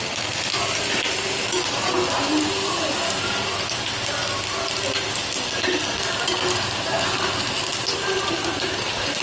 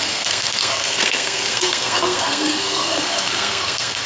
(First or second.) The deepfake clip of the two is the second